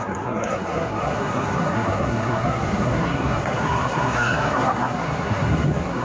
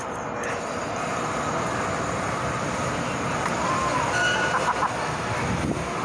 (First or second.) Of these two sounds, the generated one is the first